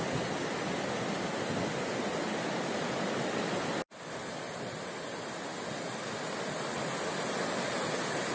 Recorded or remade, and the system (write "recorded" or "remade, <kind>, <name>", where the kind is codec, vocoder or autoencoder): recorded